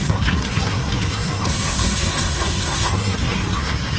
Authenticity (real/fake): fake